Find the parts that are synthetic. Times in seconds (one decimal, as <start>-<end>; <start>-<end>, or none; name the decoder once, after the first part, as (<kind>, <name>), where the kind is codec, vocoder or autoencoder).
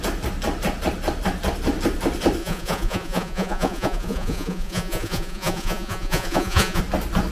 2.4-6.8 (vocoder, Vocos)